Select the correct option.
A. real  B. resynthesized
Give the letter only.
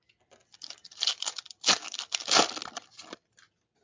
A